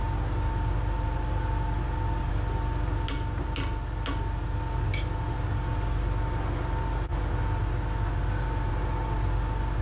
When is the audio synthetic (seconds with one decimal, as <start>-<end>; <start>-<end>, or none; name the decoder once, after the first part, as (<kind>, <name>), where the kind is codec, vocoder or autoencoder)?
none